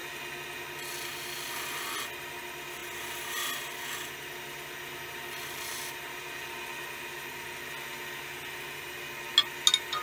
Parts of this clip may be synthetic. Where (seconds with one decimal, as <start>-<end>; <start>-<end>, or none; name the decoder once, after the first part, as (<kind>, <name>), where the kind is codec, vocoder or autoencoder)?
none